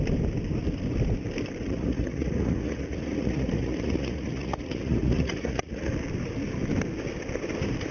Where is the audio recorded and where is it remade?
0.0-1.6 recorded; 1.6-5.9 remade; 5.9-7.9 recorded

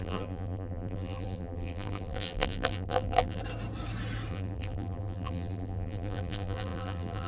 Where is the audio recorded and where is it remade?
0.0-3.4 remade; 3.4-4.3 recorded; 4.3-7.3 remade

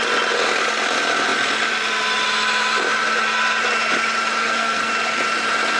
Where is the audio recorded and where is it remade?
0.0-4.4 recorded; 4.4-4.9 remade; 4.9-5.8 recorded

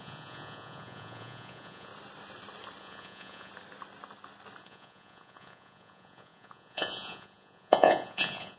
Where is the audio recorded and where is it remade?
0.0-1.9 remade; 1.9-2.8 recorded; 2.8-3.5 remade; 3.5-4.6 recorded; 4.6-8.6 remade

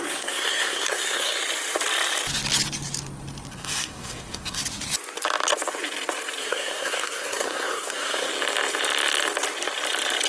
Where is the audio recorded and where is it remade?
0.0-1.4 remade; 1.4-3.5 recorded; 3.5-4.6 remade; 4.6-6.4 recorded; 6.4-8.3 remade; 8.3-10.3 recorded

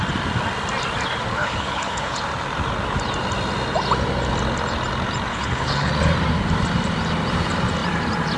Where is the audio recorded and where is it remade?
0.0-1.3 recorded; 1.3-2.2 remade; 2.2-5.3 recorded; 5.3-5.9 remade; 5.9-8.4 recorded

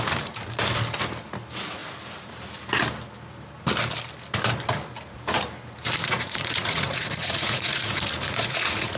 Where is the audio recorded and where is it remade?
0.0-6.0 recorded; 6.0-9.0 remade